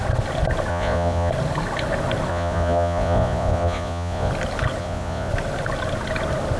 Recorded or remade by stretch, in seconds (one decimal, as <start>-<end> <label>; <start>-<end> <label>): 0.0-0.7 recorded; 0.7-1.3 remade; 1.3-2.3 recorded; 2.3-4.3 remade; 4.3-4.8 recorded; 4.8-5.3 remade; 5.3-6.6 recorded